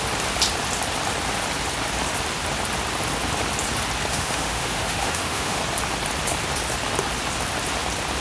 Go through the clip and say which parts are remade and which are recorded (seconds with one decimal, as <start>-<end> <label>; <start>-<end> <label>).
0.0-4.1 recorded; 4.1-5.6 remade; 5.6-8.2 recorded